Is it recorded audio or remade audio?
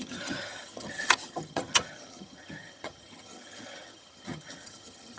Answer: remade